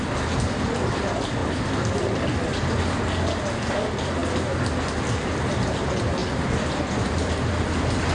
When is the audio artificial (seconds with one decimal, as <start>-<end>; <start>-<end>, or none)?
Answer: none